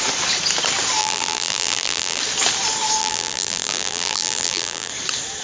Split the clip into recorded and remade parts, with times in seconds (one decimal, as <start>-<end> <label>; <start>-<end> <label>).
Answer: 0.0-1.0 recorded; 1.0-2.2 remade; 2.2-3.0 recorded; 3.0-4.9 remade; 4.9-5.4 recorded

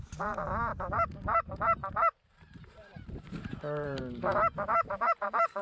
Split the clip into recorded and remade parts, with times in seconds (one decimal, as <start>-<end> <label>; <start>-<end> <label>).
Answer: 0.0-0.7 recorded; 0.7-4.0 remade; 4.0-4.7 recorded; 4.7-5.6 remade